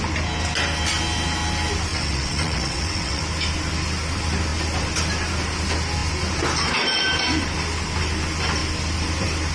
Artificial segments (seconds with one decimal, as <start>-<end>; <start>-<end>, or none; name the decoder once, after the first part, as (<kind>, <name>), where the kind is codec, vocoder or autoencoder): 1.9-3.2 (vocoder, WaveNeXt)